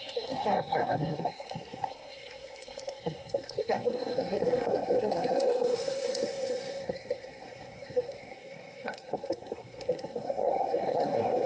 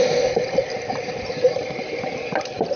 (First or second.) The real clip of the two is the second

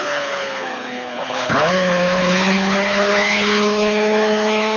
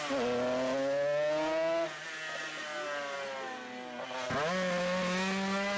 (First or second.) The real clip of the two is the second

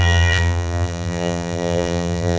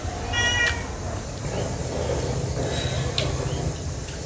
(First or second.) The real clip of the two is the second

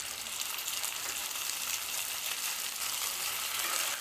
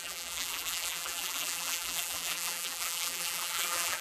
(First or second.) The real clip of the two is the first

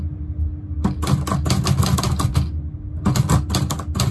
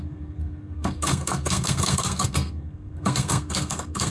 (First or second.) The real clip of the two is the first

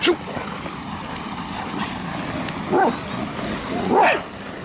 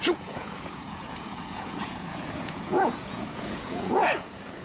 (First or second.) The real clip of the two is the first